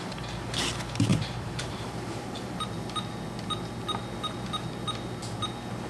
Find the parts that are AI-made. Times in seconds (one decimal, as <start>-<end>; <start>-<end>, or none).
1.1-2.7